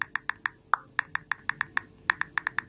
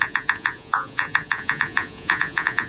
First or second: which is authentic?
first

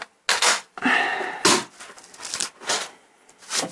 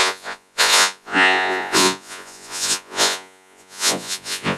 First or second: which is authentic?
first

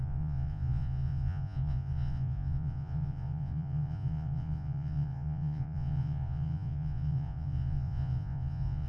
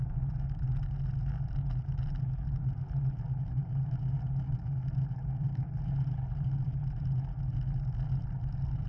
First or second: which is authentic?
second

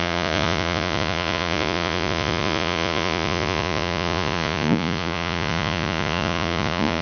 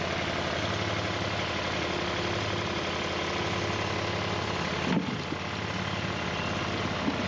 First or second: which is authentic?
second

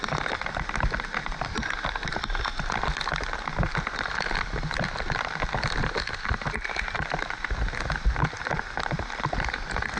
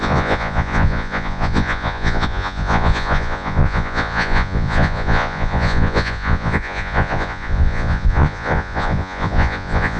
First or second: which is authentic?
first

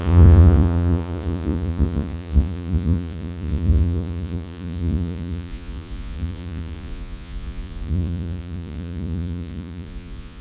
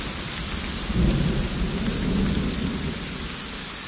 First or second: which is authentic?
second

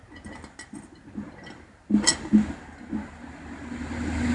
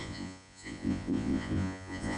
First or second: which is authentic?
first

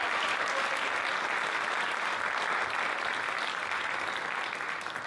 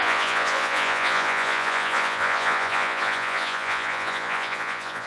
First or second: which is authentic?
first